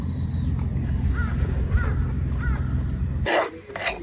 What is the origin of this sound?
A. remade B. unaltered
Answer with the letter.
B